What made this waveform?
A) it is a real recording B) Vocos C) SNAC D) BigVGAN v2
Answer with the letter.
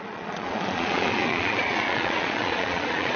B